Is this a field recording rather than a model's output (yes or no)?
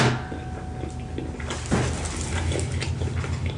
yes